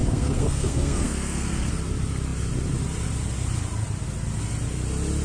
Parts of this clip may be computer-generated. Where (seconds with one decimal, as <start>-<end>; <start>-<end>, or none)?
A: 0.0-1.7